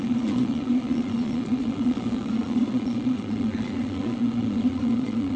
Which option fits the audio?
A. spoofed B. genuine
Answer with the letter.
A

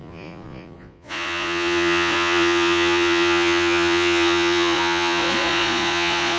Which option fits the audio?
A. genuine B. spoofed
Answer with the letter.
B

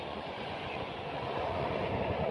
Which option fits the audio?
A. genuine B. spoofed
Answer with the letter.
B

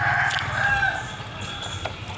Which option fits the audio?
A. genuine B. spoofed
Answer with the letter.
A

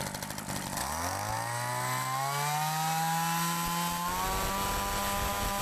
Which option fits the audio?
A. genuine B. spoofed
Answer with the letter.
A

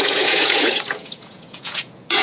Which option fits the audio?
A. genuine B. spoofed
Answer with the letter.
B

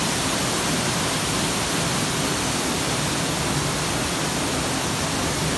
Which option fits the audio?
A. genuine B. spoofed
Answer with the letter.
A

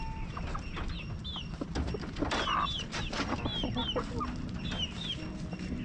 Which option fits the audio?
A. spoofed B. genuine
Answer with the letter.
B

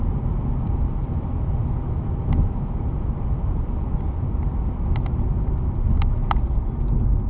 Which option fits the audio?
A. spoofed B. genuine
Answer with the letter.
B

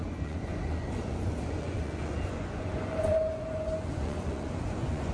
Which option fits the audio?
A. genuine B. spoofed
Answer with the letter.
B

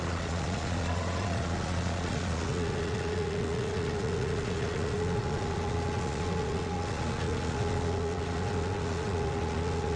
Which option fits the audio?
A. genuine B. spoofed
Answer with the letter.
B